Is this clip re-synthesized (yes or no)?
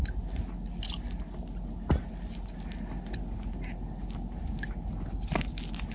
no